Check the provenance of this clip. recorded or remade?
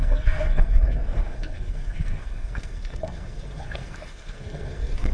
remade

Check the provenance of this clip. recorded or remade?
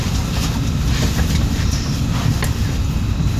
recorded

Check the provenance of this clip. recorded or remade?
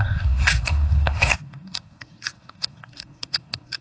remade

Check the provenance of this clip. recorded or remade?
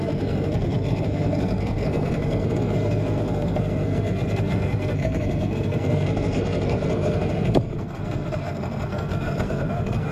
remade